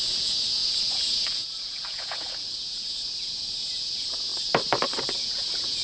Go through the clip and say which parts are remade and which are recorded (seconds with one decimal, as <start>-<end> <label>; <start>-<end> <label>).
0.0-4.3 remade; 4.3-5.2 recorded; 5.2-5.8 remade